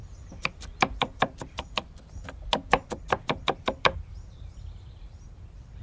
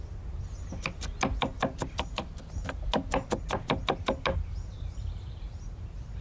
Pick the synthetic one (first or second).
first